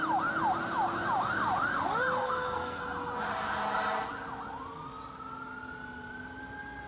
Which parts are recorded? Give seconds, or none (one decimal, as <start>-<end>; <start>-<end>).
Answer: 0.0-2.2; 2.8-6.9